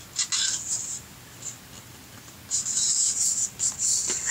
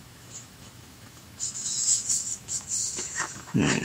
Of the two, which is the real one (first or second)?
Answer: first